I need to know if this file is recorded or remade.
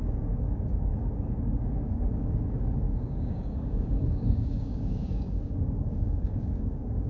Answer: remade